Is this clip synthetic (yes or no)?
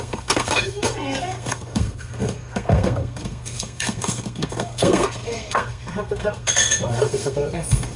yes